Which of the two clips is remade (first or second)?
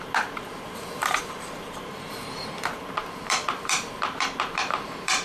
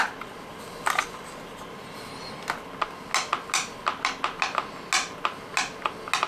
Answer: first